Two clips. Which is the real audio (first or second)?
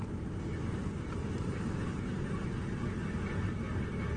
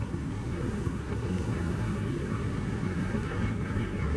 first